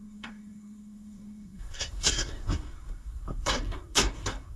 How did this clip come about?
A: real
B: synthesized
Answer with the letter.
B